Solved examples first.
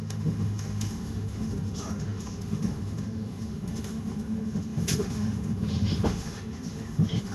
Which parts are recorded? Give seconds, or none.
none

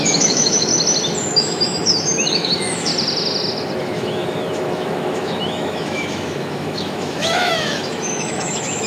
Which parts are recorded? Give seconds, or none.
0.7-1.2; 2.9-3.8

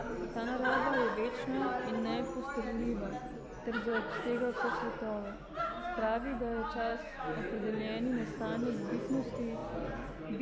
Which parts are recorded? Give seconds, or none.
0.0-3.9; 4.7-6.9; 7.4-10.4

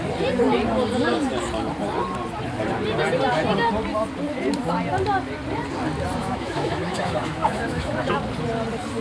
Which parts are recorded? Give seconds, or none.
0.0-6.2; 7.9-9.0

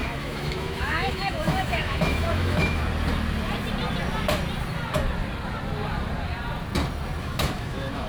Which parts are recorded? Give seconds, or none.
2.8-7.2